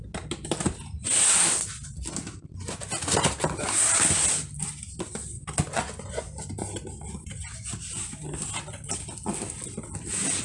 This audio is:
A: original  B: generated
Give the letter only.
A